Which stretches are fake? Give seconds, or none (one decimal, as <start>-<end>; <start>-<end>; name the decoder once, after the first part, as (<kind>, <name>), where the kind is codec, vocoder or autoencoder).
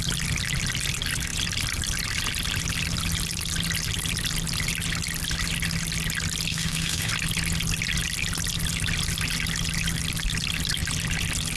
6.5-7.1 (autoencoder, DAC-VAE)